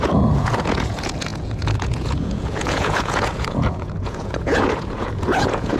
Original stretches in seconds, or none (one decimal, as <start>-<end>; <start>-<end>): none